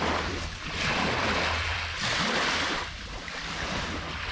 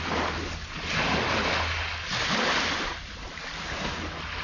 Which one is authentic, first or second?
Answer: second